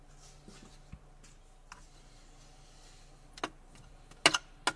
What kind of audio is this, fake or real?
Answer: real